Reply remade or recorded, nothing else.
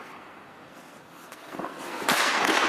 remade